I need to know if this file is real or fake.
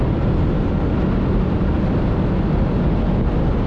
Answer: real